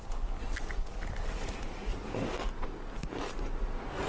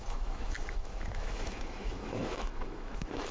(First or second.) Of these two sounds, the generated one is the second